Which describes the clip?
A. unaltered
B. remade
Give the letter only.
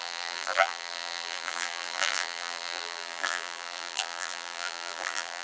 B